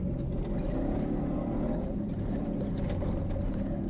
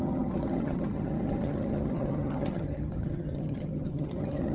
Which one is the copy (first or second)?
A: second